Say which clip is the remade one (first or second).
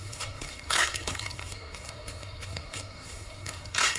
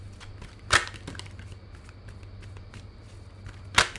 first